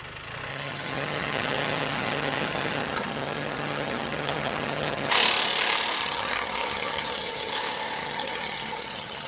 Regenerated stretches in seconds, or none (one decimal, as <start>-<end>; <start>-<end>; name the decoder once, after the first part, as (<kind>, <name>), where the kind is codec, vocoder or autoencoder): 0.5-5.1 (vocoder, HiFi-GAN); 6.0-7.5; 8.0-9.3